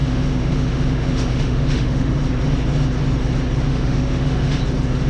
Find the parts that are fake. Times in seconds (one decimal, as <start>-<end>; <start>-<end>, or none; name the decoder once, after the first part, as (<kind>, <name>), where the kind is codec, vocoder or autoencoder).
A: 0.0-2.1 (autoencoder, DAC-VAE); 3.7-4.6